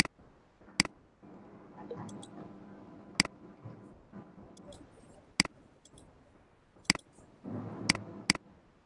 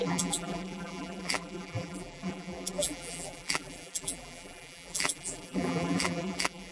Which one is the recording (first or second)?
first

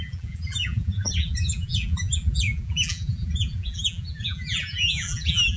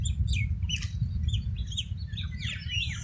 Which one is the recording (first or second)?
second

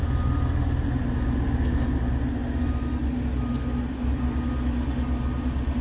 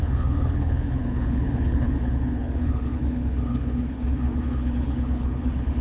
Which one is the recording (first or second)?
first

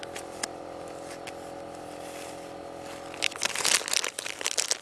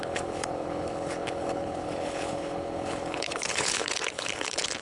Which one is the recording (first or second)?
first